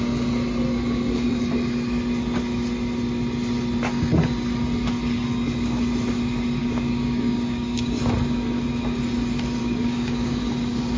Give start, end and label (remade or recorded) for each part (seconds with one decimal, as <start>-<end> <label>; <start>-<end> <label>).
0.0-6.6 recorded; 6.6-8.0 remade; 8.0-9.6 recorded; 9.6-10.4 remade; 10.4-11.0 recorded